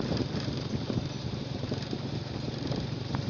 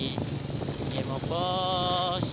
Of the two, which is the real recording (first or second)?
second